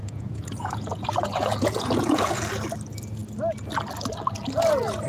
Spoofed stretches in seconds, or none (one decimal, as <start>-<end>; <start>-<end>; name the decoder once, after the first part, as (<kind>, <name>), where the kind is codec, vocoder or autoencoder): 0.0-2.4 (vocoder, Vocos)